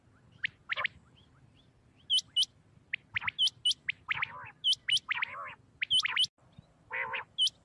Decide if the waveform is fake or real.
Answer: real